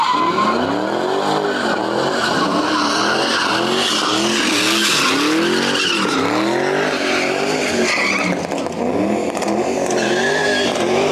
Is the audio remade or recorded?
recorded